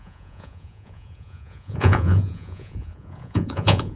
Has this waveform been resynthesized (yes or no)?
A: yes